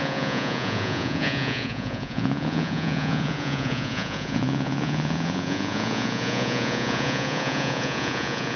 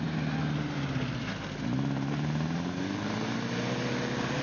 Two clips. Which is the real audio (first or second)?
second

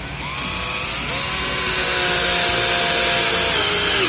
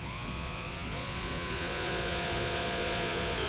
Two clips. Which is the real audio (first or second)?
first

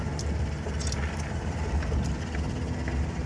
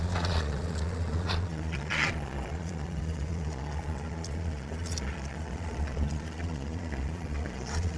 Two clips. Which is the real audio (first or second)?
first